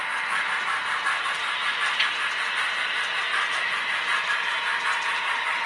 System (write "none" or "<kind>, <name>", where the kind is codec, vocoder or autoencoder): none